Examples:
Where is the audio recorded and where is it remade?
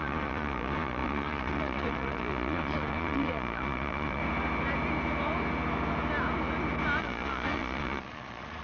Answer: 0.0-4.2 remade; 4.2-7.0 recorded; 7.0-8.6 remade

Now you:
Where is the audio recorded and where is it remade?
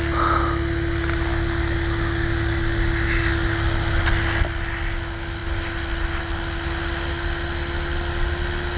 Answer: 0.0-8.8 recorded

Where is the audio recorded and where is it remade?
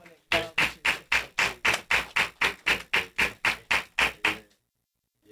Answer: 0.0-5.3 recorded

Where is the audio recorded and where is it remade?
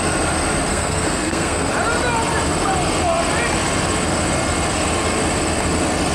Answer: 0.0-0.7 recorded; 0.7-1.7 remade; 1.7-6.1 recorded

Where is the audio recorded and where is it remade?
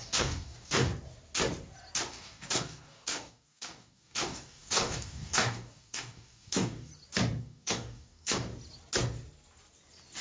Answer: 0.0-0.9 remade; 0.9-2.1 recorded; 2.1-6.9 remade; 6.9-7.4 recorded; 7.4-8.5 remade; 8.5-10.2 recorded